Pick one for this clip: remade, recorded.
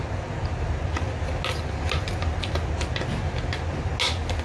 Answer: recorded